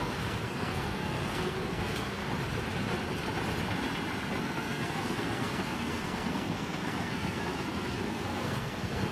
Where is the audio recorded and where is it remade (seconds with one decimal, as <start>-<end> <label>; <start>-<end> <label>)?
0.0-2.2 remade; 2.2-4.4 recorded; 4.4-9.1 remade